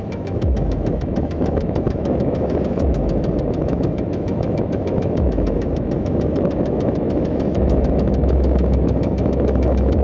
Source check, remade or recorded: remade